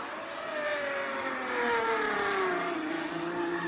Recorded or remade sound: recorded